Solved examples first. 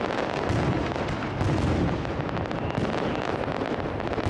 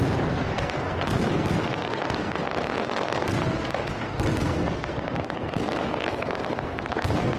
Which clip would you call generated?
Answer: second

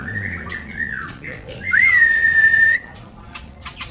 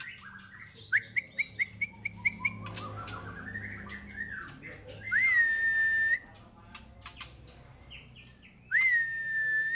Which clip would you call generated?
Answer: first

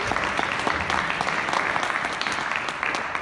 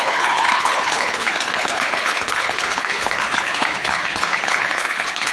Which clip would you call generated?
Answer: second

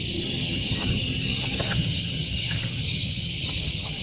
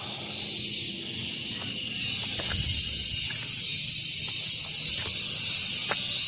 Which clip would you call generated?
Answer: first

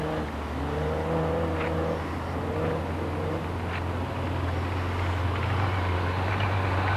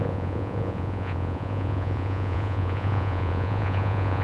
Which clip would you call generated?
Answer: second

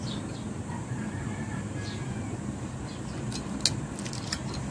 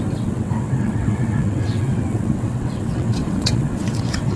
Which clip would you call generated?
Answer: second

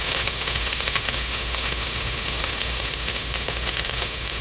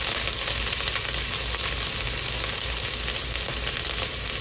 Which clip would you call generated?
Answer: first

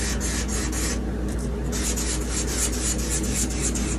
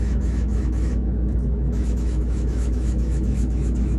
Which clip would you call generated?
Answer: second